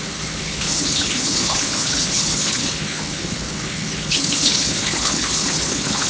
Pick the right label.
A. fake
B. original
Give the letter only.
A